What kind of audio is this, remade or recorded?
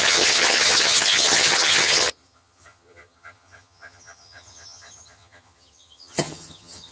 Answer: remade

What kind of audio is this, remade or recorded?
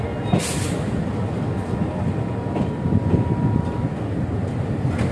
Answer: recorded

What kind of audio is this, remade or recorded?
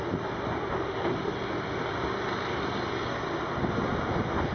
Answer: recorded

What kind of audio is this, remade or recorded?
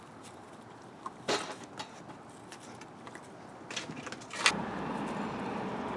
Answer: recorded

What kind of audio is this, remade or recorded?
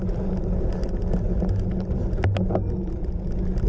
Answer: recorded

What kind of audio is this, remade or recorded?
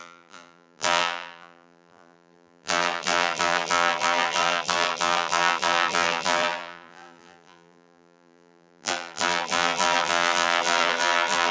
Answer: remade